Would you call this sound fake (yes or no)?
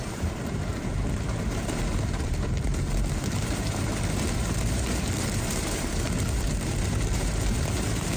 yes